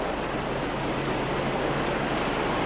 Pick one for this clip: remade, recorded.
recorded